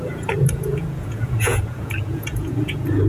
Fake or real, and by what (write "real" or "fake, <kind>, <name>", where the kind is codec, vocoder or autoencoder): fake, vocoder, Vocos